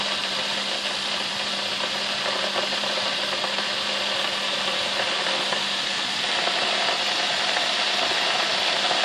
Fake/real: fake